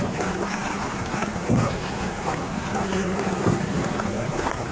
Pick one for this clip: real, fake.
fake